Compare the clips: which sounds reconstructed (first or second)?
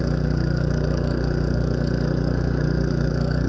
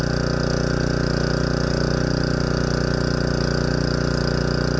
first